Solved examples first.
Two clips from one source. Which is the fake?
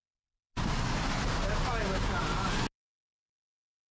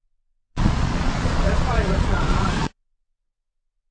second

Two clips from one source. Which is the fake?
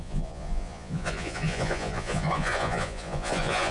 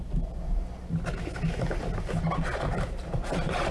first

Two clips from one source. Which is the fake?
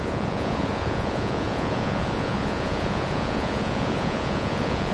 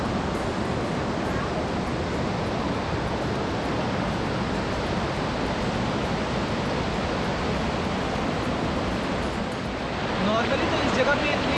first